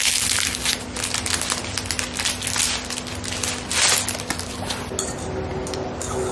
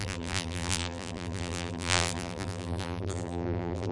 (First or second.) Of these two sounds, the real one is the first